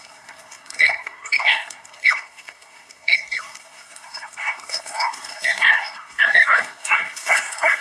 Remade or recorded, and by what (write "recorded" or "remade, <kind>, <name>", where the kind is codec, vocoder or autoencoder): remade, codec, SNAC